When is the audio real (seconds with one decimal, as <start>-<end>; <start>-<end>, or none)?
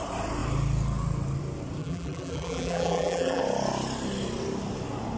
0.0-1.8; 3.4-5.2